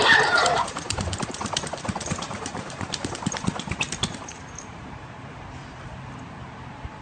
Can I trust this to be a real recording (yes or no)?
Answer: no